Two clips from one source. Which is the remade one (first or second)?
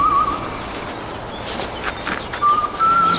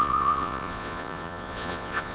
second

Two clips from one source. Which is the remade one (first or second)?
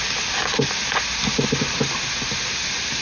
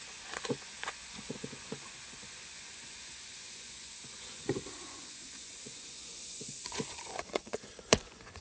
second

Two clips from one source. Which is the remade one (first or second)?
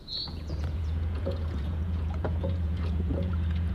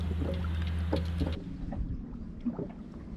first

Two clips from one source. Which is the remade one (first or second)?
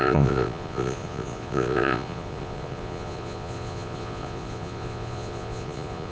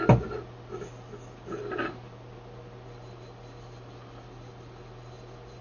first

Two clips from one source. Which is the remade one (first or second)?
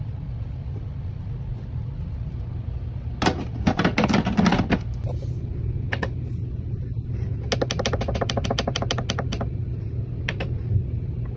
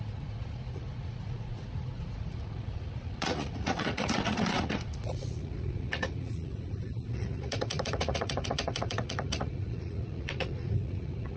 second